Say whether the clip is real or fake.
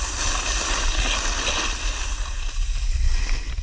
real